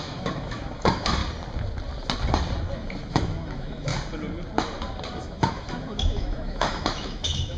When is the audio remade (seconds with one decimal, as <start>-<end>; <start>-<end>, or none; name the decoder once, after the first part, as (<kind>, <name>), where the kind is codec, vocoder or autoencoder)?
0.0-1.2 (autoencoder, DAC-VAE); 3.1-3.9; 5.2-7.6